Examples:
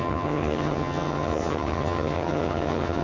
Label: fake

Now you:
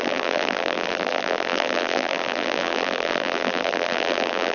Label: fake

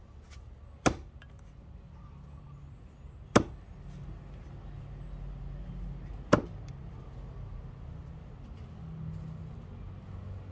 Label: real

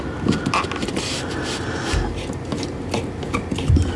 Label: real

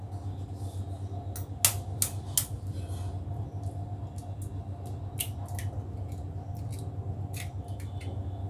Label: real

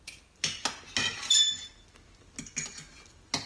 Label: real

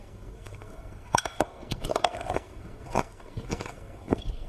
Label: fake